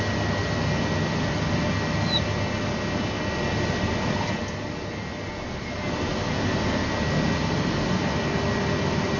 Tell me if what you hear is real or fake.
real